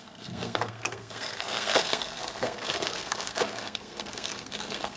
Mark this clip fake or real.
fake